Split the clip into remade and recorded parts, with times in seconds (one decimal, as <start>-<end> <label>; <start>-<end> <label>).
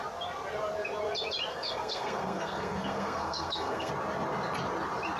0.0-1.5 recorded; 1.5-3.9 remade; 3.9-5.2 recorded